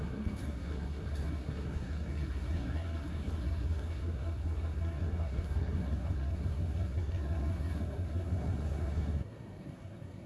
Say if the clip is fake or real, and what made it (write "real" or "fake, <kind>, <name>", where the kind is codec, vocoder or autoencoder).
fake, codec, SNAC